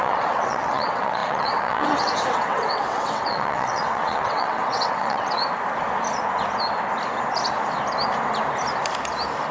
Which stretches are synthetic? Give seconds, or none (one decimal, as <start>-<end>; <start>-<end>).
0.0-5.4